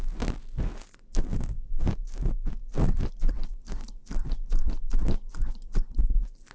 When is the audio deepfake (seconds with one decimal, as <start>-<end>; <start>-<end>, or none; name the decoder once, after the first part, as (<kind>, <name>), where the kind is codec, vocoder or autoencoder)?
none